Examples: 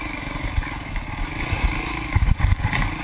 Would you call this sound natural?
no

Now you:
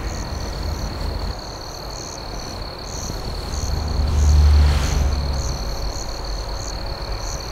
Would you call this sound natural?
yes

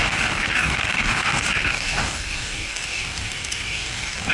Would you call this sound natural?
no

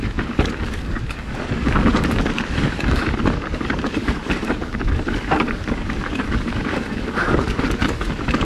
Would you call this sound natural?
no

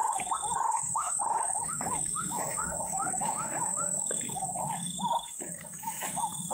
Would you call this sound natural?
no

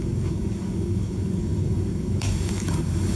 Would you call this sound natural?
no